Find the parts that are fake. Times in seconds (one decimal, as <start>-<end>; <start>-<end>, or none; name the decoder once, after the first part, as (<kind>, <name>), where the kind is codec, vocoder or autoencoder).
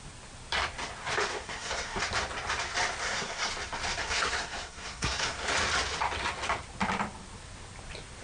1.3-2.0 (codec, SNAC); 3.0-3.5; 4.0-5.5